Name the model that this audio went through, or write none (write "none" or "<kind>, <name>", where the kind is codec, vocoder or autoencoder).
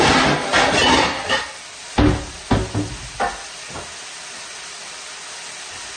none